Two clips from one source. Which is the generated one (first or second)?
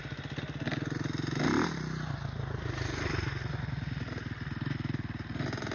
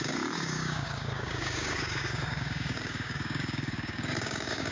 second